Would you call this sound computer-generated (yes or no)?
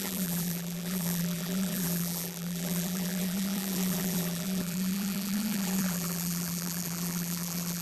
yes